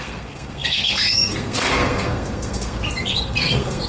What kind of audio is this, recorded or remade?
remade